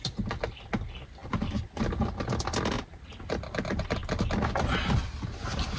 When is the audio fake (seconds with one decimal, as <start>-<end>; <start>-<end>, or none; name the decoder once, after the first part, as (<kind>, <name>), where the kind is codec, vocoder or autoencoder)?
none